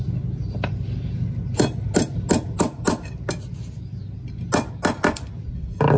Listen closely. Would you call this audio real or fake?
real